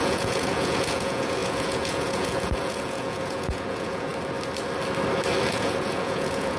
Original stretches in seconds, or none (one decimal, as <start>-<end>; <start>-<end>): 4.1-5.5